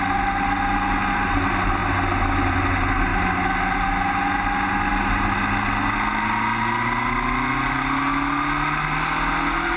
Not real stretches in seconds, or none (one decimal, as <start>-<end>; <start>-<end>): none